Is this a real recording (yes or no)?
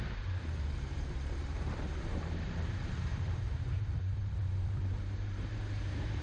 no